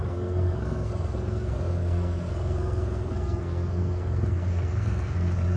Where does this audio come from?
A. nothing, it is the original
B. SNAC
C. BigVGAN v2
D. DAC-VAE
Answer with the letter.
B